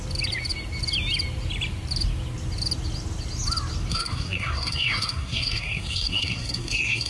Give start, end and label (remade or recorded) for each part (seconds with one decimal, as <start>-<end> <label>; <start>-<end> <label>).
0.0-3.9 recorded; 3.9-7.1 remade